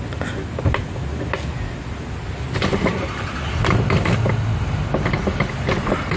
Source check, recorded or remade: recorded